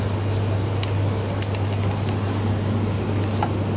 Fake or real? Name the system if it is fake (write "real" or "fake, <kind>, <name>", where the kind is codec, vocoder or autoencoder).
real